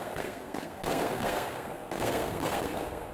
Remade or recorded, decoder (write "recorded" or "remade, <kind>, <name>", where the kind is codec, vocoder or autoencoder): remade, codec, SNAC